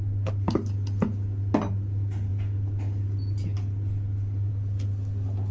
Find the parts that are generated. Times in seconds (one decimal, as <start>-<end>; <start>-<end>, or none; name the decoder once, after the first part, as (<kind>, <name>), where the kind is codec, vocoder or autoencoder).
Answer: none